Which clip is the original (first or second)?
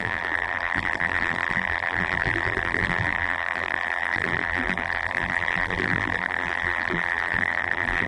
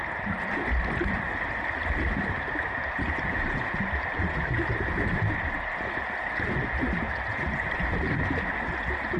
second